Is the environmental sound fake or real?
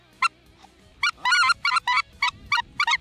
real